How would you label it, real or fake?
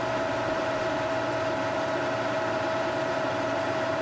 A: fake